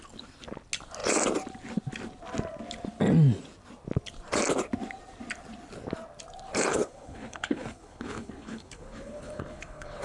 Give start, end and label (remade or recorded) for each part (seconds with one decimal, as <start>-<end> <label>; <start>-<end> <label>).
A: 0.0-6.7 recorded; 6.7-10.0 remade